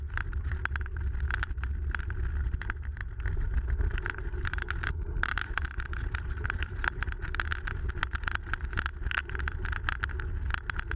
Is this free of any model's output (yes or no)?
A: yes